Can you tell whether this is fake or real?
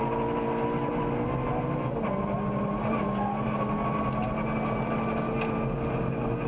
real